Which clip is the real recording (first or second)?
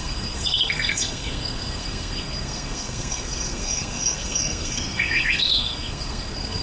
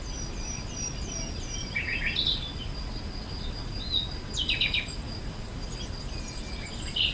second